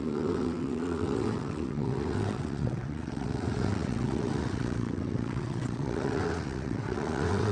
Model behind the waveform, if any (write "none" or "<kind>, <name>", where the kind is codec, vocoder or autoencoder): vocoder, WaveNeXt